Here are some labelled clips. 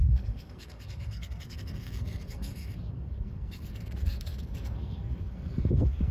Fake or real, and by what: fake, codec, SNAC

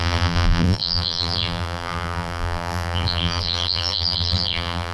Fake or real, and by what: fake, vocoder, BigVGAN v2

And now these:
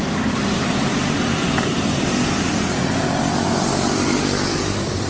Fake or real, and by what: fake, vocoder, BigVGAN v2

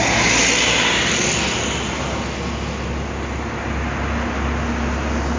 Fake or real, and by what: real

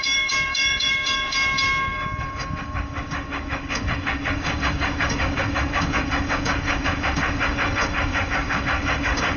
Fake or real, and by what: fake, codec, DAC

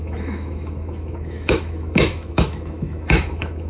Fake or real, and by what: fake, autoencoder, DAC-VAE